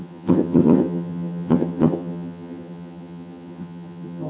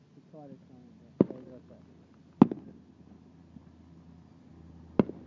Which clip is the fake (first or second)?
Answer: first